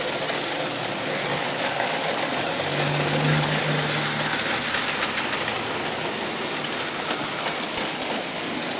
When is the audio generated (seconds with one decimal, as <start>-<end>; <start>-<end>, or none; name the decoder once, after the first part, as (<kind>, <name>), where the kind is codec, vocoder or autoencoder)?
1.3-3.6 (codec, DAC)